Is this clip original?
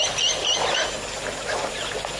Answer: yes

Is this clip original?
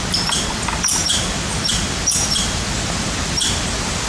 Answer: yes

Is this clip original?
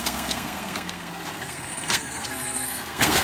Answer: no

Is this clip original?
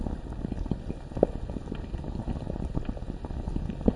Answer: yes